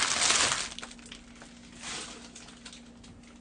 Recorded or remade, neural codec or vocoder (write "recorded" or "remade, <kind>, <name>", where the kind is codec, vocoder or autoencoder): recorded